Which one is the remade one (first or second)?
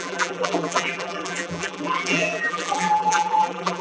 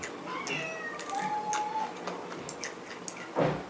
first